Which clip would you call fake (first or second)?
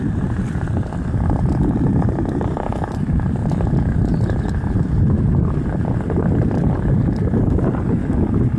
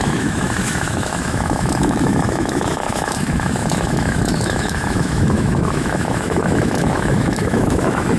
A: second